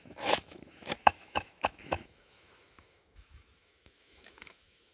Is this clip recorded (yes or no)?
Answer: no